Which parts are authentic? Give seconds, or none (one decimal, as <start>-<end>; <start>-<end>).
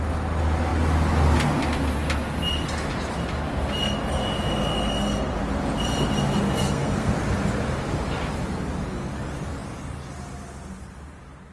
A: 0.0-6.5; 7.1-11.5